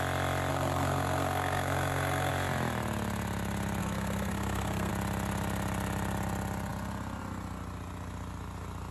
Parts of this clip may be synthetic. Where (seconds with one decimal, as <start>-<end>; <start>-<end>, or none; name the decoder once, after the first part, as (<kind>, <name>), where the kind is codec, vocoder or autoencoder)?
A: 0.5-2.3 (codec, SNAC); 3.8-4.9